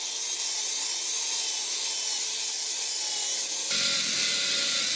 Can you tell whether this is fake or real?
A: real